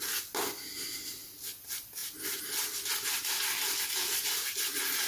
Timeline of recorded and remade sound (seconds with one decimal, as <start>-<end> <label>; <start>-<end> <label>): 0.0-5.1 recorded